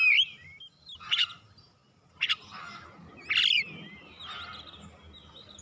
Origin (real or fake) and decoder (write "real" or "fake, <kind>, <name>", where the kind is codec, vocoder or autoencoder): real